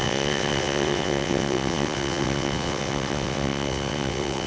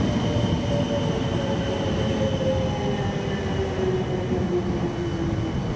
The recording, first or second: second